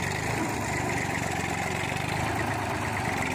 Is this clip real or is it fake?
real